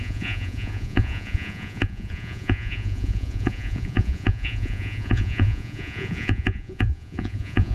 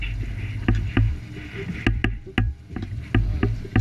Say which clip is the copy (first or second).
first